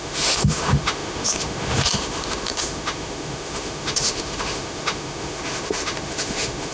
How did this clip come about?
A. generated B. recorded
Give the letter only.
A